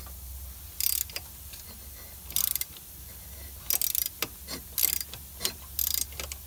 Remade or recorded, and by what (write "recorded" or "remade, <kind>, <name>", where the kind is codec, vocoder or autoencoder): recorded